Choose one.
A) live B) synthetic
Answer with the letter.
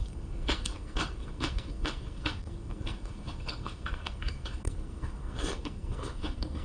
B